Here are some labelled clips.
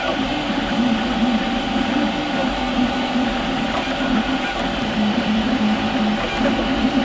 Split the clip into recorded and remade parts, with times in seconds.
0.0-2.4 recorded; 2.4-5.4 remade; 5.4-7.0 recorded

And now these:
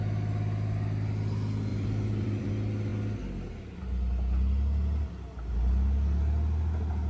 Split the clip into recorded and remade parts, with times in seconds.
0.0-1.7 recorded; 1.7-2.5 remade; 2.5-7.1 recorded